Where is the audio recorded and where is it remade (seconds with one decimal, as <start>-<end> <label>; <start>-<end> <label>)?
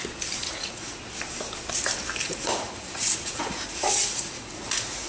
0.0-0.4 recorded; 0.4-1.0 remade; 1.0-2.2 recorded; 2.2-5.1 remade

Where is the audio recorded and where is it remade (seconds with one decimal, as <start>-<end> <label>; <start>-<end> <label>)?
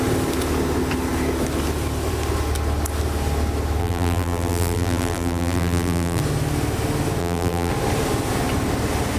0.0-3.8 recorded; 3.8-6.2 remade; 6.2-7.2 recorded; 7.2-7.7 remade; 7.7-9.2 recorded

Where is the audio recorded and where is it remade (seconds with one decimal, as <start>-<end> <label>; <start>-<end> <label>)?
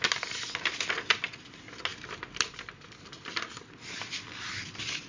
0.0-5.1 recorded